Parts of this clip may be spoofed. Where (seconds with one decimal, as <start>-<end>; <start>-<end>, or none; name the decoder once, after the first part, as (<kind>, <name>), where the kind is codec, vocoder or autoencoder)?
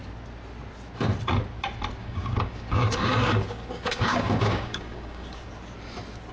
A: 2.0-5.5 (codec, DAC)